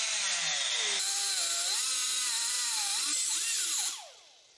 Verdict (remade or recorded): recorded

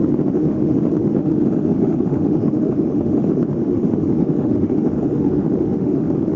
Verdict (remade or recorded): remade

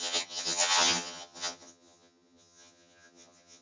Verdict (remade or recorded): remade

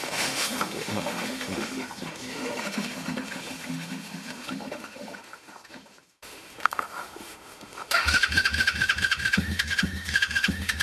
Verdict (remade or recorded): remade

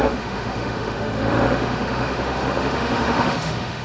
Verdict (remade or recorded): remade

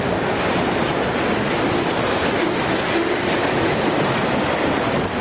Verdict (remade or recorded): recorded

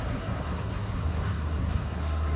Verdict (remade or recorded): remade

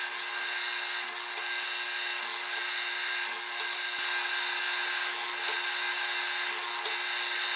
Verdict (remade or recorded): recorded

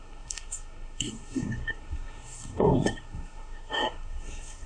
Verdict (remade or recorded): remade